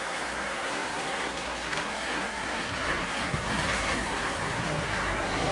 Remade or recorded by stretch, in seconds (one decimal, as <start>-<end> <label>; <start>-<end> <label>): 0.0-5.5 remade